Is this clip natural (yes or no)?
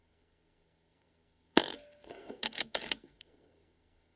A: no